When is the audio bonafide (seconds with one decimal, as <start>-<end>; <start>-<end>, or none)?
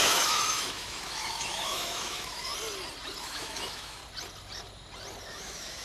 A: 2.5-3.2; 4.0-5.3